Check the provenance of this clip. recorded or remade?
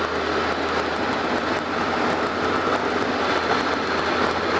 recorded